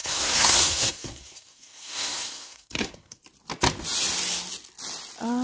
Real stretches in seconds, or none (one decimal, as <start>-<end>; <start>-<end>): 3.2-5.4